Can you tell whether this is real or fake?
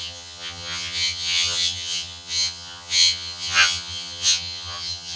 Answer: fake